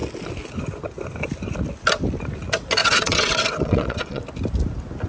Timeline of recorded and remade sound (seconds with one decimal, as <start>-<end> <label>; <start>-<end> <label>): 0.0-2.8 recorded; 2.8-4.2 remade; 4.2-5.1 recorded